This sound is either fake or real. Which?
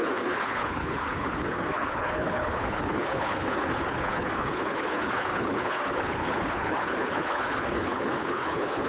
fake